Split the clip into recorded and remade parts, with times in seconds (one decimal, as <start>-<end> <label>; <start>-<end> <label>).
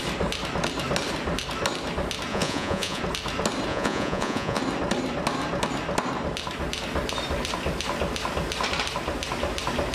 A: 0.0-2.3 recorded; 2.3-3.0 remade; 3.0-3.7 recorded; 3.7-4.6 remade; 4.6-9.9 recorded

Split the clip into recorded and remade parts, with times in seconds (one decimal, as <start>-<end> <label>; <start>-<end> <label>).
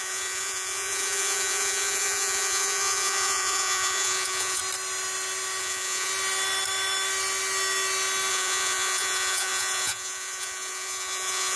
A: 0.0-4.6 remade; 4.6-5.6 recorded; 5.6-6.1 remade; 6.1-8.3 recorded; 8.3-11.6 remade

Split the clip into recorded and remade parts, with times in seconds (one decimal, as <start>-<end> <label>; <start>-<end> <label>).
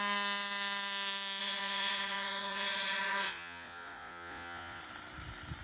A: 0.0-1.4 recorded; 1.4-4.8 remade; 4.8-5.6 recorded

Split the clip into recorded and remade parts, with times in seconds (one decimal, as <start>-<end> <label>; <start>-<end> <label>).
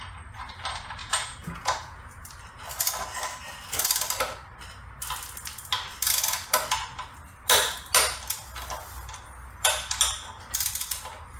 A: 0.0-1.0 recorded; 1.0-2.2 remade; 2.2-11.4 recorded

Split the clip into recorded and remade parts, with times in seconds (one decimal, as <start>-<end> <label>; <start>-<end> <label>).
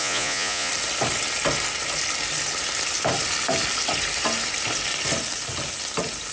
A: 0.0-0.7 remade; 0.7-6.3 recorded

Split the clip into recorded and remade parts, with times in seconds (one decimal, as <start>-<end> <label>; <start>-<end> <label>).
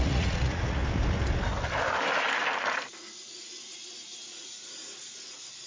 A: 0.0-0.8 remade; 0.8-4.2 recorded; 4.2-5.7 remade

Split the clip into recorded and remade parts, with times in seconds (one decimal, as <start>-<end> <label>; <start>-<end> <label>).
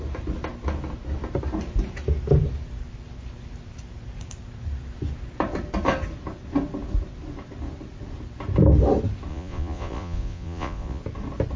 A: 0.0-9.3 recorded; 9.3-11.0 remade; 11.0-11.6 recorded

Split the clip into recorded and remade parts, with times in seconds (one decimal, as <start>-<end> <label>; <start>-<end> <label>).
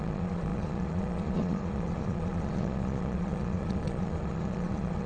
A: 0.0-5.1 remade